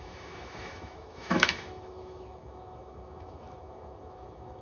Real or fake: fake